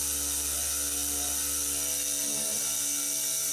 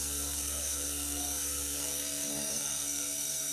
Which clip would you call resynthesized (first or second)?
second